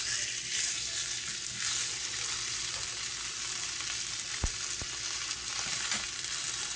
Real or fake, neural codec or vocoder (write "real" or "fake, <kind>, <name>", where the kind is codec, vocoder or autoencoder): real